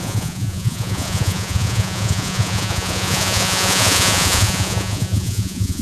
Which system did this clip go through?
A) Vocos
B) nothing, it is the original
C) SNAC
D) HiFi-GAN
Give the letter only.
A